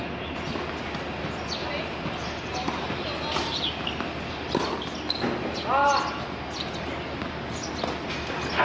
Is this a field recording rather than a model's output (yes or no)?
yes